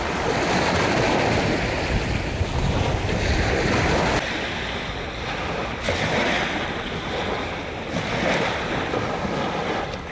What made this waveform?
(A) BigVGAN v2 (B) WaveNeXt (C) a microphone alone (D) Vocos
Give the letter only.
C